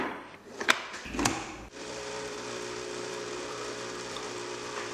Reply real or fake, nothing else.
fake